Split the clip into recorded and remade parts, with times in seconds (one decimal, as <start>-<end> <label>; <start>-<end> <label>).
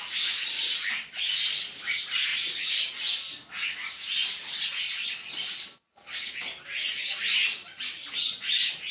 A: 0.0-8.9 recorded